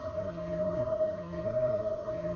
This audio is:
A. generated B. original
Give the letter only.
A